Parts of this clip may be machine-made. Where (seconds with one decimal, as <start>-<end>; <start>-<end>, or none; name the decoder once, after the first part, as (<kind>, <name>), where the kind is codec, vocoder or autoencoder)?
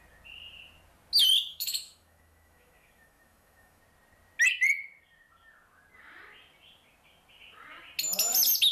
1.5-3.8 (autoencoder, DAC-VAE)